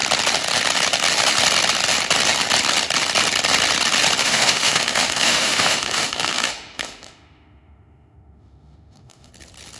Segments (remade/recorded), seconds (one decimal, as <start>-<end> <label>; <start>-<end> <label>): 0.0-4.2 recorded; 4.2-9.3 remade; 9.3-9.8 recorded

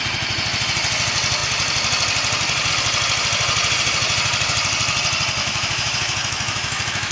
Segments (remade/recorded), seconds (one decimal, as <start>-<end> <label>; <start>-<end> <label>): 0.0-5.4 recorded; 5.4-7.1 remade

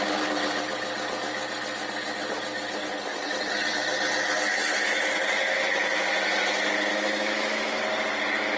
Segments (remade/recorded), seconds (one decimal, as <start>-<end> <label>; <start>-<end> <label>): 0.0-6.9 recorded; 6.9-7.8 remade; 7.8-8.6 recorded